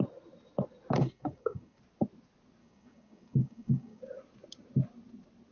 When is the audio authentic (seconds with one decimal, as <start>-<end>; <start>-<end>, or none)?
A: 0.0-1.0; 1.8-2.6; 4.0-5.5

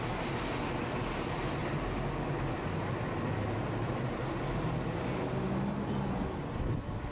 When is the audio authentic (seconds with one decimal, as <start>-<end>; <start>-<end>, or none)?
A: 0.0-7.1